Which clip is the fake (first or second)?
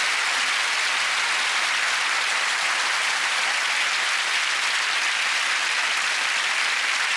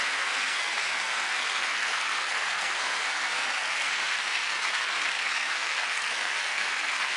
second